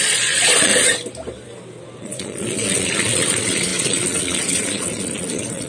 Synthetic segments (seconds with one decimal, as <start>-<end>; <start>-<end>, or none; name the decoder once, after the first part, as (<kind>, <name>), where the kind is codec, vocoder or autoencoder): 0.0-0.7 (vocoder, Vocos); 2.0-5.7